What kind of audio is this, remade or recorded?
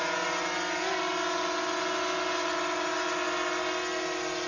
recorded